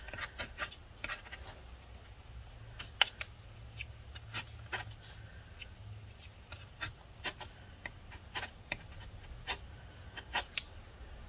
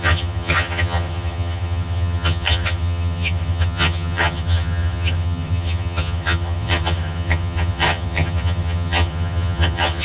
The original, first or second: first